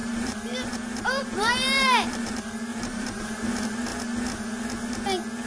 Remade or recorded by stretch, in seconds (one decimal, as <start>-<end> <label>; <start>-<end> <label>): 0.0-3.3 remade; 3.3-5.5 recorded